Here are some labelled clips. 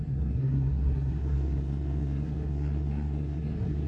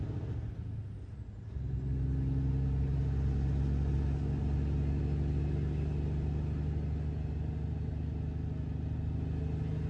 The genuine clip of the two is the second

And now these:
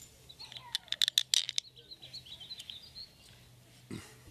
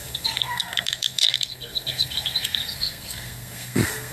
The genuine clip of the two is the first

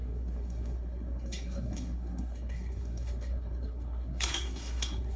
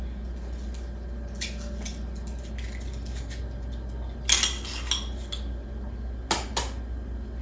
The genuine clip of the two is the second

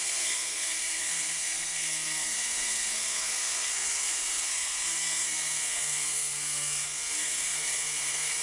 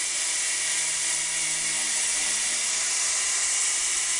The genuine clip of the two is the second